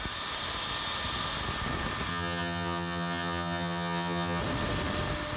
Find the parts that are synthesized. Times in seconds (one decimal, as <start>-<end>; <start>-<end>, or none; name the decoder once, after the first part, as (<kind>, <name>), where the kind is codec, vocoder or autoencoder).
2.1-4.4 (vocoder, HiFi-GAN)